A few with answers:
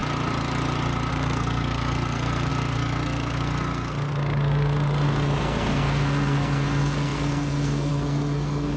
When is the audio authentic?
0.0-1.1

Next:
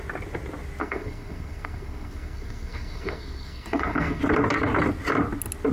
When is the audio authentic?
0.0-0.8; 4.2-5.7

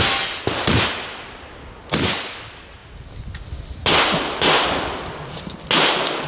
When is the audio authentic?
0.0-6.3

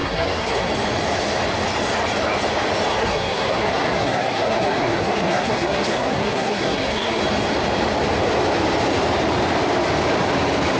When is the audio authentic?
0.7-2.9; 7.2-10.8

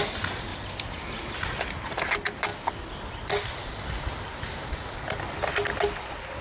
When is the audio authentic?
0.0-6.4

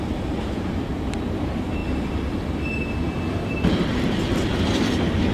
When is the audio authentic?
0.0-5.3